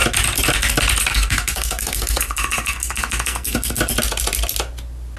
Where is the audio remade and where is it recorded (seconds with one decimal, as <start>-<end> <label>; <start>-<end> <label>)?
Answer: 0.0-1.1 recorded; 1.1-3.8 remade; 3.8-5.2 recorded